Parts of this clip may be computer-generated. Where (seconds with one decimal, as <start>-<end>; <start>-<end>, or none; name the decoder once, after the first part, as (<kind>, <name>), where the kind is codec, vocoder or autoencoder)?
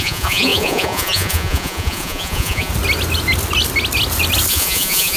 0.0-2.7 (vocoder, Vocos); 4.5-5.2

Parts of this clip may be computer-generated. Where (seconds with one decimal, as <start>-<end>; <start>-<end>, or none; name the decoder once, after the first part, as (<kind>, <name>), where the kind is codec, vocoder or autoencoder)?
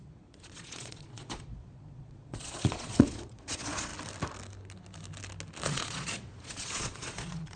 0.0-3.9 (vocoder, Vocos); 5.7-7.6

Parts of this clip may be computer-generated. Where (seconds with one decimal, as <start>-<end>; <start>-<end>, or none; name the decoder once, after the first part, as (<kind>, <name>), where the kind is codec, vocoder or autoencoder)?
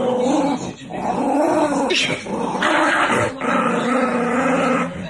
none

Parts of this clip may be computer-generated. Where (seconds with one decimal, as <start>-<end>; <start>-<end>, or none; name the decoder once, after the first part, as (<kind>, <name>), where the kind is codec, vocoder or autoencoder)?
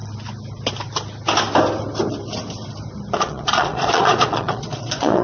3.1-5.2 (vocoder, Vocos)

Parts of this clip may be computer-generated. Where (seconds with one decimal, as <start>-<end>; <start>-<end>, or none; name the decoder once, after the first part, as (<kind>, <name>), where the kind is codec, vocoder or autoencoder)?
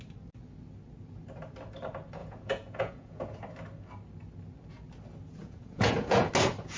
2.2-3.4 (vocoder, Vocos); 5.4-6.3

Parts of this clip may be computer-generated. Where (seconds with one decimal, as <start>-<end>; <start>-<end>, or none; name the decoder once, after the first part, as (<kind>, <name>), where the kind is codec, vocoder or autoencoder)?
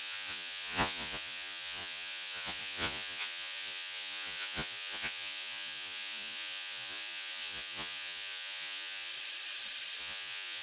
0.0-9.1 (vocoder, Vocos); 10.0-10.6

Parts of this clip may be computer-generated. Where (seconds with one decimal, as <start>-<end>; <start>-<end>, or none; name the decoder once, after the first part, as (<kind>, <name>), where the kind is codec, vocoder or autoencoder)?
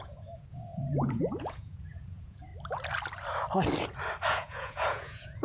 0.0-2.5 (vocoder, Vocos); 4.3-5.4